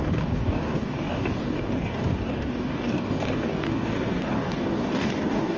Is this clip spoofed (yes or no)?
yes